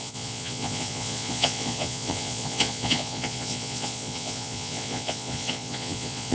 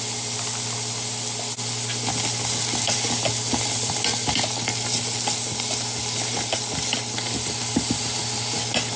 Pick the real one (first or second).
second